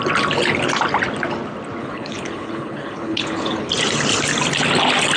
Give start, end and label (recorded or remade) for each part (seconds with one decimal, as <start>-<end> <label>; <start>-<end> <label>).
0.0-1.8 recorded; 1.8-3.7 remade; 3.7-5.2 recorded